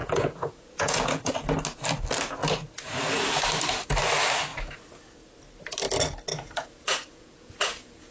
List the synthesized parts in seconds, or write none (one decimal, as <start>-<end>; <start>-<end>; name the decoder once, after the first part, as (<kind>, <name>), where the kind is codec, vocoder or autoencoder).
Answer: 0.0-1.3 (vocoder, Vocos); 6.3-8.1